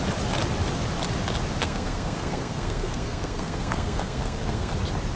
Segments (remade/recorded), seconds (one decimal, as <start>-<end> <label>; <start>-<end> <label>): 0.0-1.6 recorded; 1.6-4.7 remade; 4.7-5.2 recorded